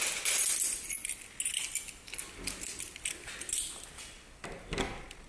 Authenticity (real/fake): real